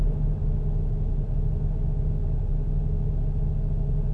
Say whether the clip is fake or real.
real